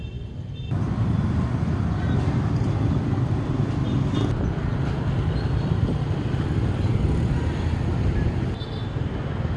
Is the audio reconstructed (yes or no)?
no